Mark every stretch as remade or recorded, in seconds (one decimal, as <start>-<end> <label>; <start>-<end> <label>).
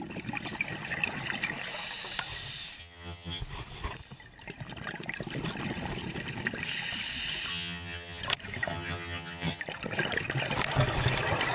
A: 0.0-2.8 recorded; 2.8-3.4 remade; 3.4-7.5 recorded; 7.5-8.2 remade; 8.2-8.7 recorded; 8.7-9.6 remade; 9.6-11.5 recorded